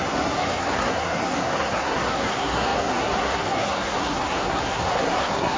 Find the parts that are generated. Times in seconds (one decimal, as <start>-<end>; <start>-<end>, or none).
0.0-5.6